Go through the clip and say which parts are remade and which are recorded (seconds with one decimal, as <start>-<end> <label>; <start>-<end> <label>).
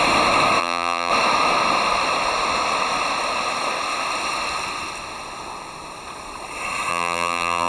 0.0-0.6 recorded; 0.6-1.1 remade; 1.1-6.9 recorded; 6.9-7.7 remade